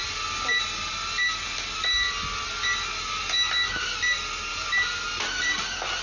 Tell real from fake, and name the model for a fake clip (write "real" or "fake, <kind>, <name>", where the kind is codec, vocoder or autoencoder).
real